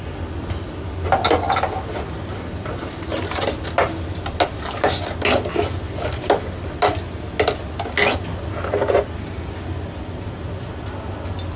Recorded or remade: recorded